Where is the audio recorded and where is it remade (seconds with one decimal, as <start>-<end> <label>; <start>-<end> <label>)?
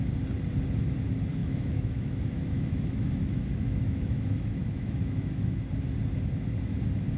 0.0-1.4 recorded; 1.4-5.7 remade; 5.7-7.2 recorded